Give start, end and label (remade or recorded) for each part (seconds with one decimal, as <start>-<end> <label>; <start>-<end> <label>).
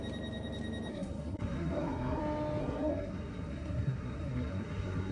0.0-0.9 recorded; 0.9-2.2 remade; 2.2-2.6 recorded; 2.6-5.1 remade